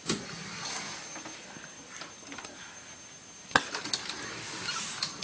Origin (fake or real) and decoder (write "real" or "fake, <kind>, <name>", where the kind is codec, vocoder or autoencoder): real